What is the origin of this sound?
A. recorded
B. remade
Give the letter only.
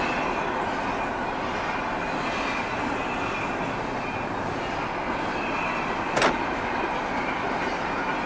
A